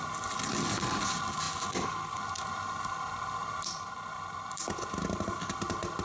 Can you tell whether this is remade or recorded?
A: recorded